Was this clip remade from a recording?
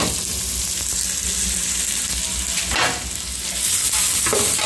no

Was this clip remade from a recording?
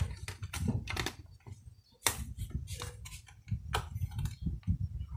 no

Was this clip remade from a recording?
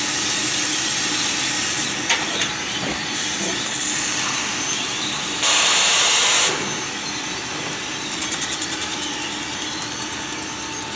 no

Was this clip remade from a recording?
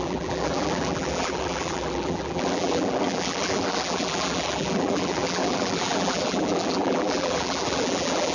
yes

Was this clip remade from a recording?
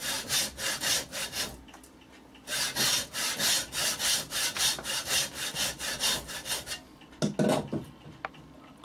no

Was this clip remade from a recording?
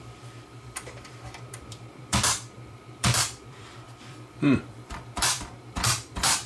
yes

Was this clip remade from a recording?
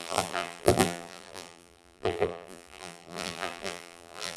yes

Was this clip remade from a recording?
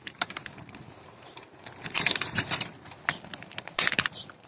yes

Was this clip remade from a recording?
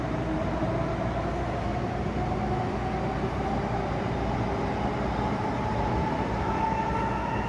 no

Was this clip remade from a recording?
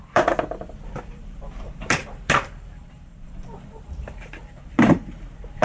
yes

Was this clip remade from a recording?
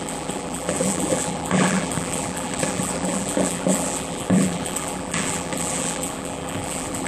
yes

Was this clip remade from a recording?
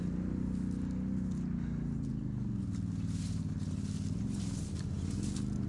no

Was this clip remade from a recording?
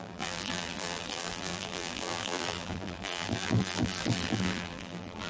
yes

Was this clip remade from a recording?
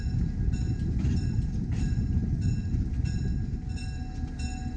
no